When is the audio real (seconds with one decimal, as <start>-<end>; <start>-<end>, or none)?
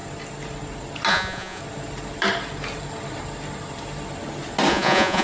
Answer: 0.0-1.1; 1.6-4.7